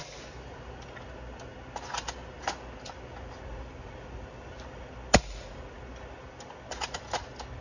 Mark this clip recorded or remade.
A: recorded